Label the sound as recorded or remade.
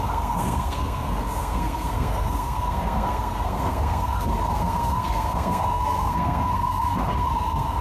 remade